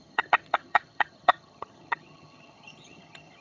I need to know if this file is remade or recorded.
remade